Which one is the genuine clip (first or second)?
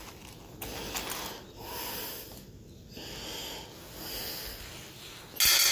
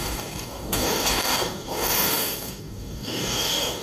first